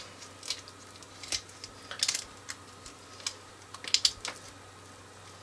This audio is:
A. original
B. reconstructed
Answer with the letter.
A